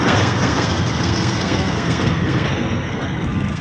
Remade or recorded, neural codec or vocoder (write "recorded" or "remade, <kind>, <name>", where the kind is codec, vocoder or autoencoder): remade, codec, SNAC